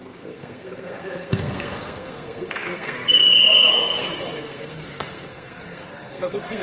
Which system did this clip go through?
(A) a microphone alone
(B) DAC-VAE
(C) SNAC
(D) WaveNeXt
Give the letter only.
C